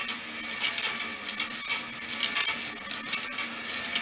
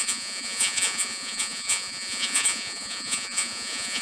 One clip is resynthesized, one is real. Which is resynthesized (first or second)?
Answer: second